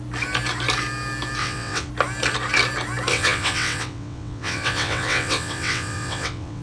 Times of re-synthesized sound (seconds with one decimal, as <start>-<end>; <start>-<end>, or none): 1.4-1.9; 3.1-6.6